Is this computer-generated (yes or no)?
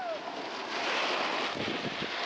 no